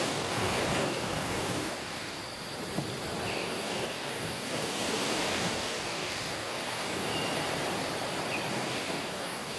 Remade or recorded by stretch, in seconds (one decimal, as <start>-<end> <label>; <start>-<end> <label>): 0.0-2.2 remade; 2.2-3.3 recorded; 3.3-7.1 remade; 7.1-8.5 recorded; 8.5-9.6 remade